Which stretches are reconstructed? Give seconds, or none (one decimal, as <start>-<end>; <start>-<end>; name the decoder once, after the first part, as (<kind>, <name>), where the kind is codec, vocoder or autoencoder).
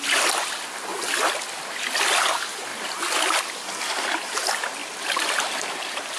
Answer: none